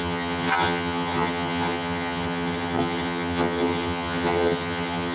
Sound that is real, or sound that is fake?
fake